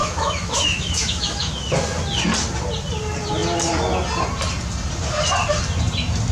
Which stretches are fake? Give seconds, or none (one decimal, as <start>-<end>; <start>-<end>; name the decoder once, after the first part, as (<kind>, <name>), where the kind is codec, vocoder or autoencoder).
0.0-1.5 (autoencoder, DAC-VAE)